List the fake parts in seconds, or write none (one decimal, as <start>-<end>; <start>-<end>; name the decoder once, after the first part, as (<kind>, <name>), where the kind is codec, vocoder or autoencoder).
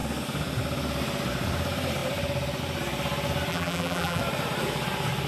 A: 3.5-4.2 (vocoder, BigVGAN v2)